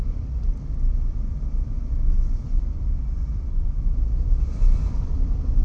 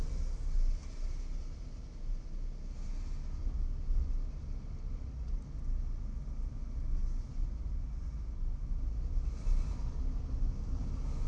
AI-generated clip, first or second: first